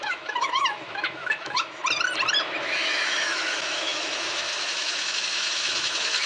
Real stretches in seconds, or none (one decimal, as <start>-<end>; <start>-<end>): 1.8-2.6